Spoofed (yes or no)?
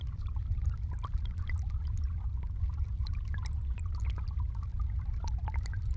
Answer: no